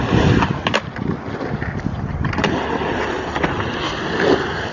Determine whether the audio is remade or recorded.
recorded